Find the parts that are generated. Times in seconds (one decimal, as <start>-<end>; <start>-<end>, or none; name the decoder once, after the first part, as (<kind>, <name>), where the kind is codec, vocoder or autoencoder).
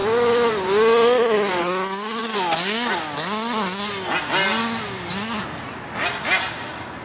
none